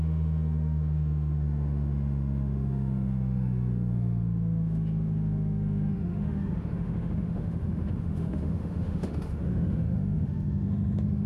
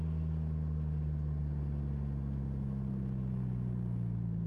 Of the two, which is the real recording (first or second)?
second